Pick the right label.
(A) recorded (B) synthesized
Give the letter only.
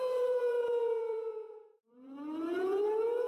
B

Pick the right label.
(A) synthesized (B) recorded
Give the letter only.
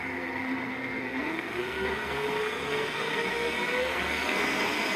A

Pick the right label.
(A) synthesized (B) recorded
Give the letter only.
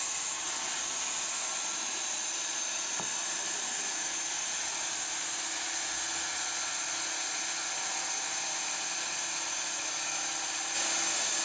B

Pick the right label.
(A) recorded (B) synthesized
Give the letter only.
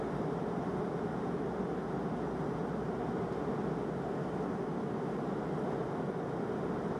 A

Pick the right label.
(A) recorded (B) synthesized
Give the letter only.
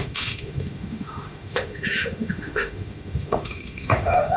B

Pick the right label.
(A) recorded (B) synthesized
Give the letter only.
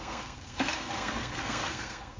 B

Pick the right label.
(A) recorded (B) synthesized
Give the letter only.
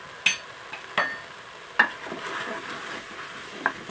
A